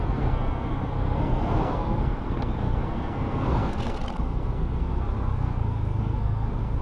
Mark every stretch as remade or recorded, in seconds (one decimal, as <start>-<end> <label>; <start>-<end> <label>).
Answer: 0.0-6.8 remade